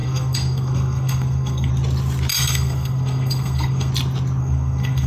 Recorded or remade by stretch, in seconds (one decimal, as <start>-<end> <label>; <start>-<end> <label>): 0.0-1.7 remade; 1.7-2.3 recorded; 2.3-3.9 remade; 3.9-4.4 recorded; 4.4-5.1 remade